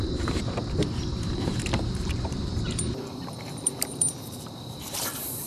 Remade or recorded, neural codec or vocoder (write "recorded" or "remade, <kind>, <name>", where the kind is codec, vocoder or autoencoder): remade, vocoder, BigVGAN v2